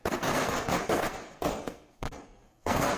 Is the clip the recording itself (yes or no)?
no